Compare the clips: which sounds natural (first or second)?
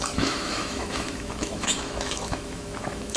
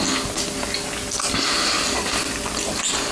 second